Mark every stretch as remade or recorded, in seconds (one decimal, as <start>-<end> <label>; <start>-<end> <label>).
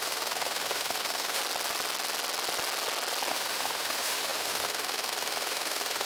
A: 0.0-1.4 remade; 1.4-3.3 recorded; 3.3-6.1 remade